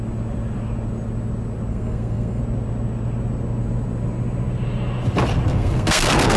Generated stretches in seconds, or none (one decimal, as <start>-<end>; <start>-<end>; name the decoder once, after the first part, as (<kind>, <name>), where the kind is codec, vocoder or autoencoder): 1.7-2.4 (codec, SNAC); 5.5-6.4